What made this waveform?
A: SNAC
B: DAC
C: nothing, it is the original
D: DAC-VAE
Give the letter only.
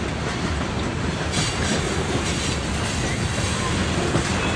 C